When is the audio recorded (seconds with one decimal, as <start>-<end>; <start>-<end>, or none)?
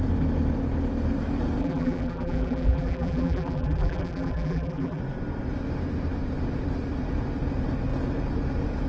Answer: 0.0-1.6; 5.0-8.9